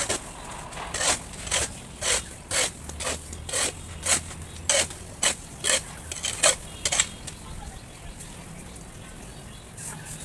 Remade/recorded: recorded